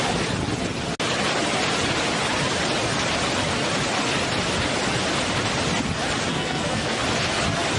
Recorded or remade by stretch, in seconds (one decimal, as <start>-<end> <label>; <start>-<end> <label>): 0.0-6.3 recorded; 6.3-7.0 remade; 7.0-7.8 recorded